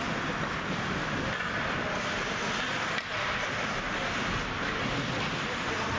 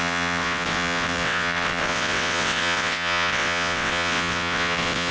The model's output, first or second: second